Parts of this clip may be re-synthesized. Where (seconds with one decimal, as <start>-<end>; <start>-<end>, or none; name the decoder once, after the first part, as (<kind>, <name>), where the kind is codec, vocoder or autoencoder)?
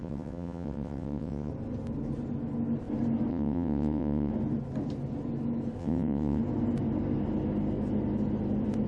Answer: 0.0-1.5 (vocoder, WaveNeXt); 3.3-4.3; 5.8-6.4